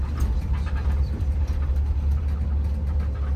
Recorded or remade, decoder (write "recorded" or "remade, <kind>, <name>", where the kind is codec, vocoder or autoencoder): remade, vocoder, BigVGAN v2